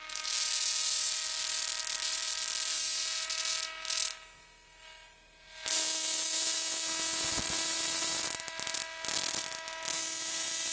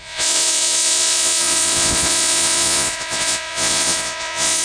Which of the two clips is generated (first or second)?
second